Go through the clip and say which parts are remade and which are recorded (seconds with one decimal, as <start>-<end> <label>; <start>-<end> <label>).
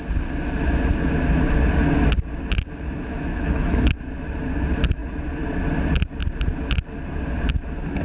0.0-3.3 recorded; 3.3-3.9 remade; 3.9-8.0 recorded